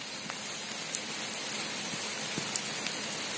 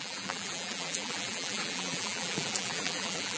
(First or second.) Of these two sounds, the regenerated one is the second